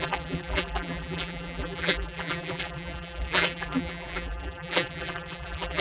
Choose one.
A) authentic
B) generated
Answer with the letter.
B